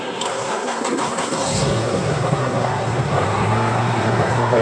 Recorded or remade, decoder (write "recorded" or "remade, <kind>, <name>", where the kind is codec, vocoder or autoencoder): remade, codec, SNAC